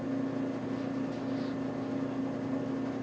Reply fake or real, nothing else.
real